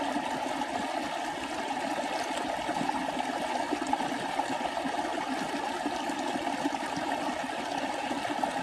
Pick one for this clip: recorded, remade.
recorded